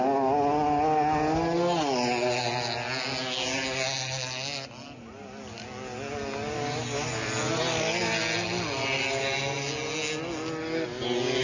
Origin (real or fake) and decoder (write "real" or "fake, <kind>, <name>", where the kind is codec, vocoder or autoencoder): real